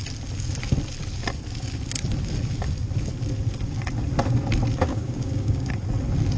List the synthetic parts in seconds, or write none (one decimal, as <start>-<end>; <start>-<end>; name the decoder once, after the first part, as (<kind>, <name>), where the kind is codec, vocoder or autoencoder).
4.9-5.7 (codec, DAC)